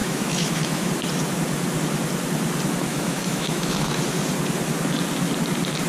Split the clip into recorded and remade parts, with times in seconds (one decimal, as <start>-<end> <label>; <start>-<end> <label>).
0.0-0.9 remade; 0.9-2.9 recorded; 2.9-4.0 remade; 4.0-5.9 recorded